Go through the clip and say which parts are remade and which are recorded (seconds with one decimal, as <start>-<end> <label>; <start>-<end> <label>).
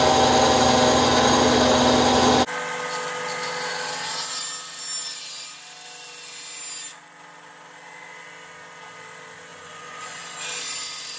0.0-9.5 recorded; 9.5-10.2 remade; 10.2-11.2 recorded